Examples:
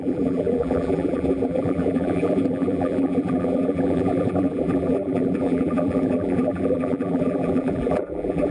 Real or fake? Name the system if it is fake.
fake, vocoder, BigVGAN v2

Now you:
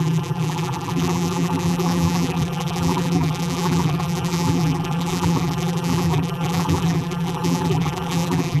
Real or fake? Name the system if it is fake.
fake, vocoder, BigVGAN v2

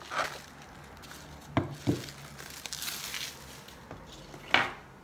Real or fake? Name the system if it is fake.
real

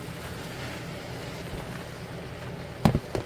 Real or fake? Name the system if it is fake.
real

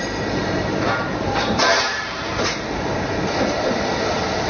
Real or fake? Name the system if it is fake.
fake, vocoder, BigVGAN v2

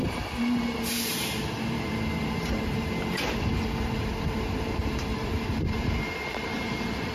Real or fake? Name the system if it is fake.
fake, vocoder, BigVGAN v2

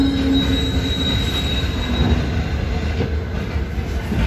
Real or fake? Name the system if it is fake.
real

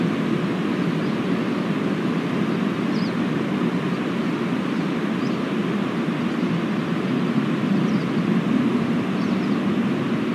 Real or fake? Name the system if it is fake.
real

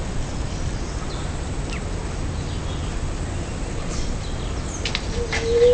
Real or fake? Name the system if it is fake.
real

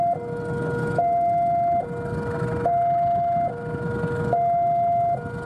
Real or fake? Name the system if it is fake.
real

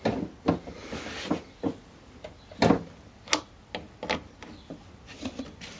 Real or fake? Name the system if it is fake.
real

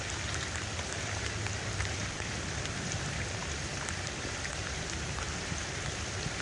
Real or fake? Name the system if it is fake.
fake, vocoder, BigVGAN v2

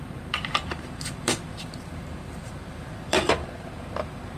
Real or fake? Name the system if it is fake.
fake, vocoder, BigVGAN v2